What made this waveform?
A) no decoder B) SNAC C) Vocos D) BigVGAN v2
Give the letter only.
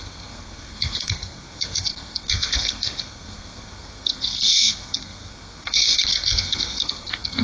B